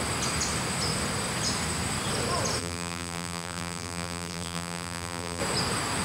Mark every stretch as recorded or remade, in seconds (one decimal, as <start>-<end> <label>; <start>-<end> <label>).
0.0-2.6 recorded; 2.6-5.4 remade; 5.4-6.0 recorded